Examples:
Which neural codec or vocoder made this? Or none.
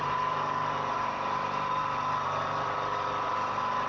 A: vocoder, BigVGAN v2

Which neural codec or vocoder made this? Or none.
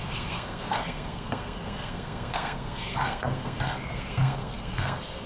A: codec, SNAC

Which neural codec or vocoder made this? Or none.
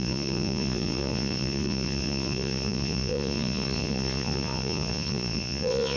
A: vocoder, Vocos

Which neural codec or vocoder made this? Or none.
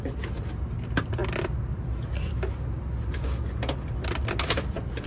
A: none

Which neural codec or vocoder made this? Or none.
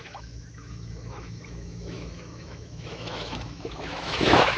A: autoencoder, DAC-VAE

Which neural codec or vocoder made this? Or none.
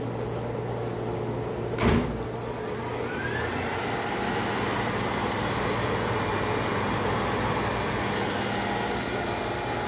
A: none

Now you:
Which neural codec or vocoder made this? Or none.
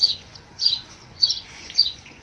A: vocoder, Vocos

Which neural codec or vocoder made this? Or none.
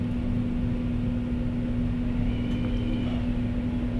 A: none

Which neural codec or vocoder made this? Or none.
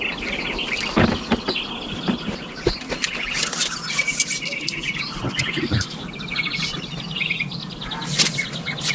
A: none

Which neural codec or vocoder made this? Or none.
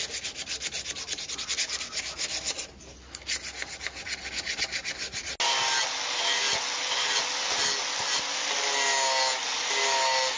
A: none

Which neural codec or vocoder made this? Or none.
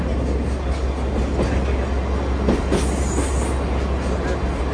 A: none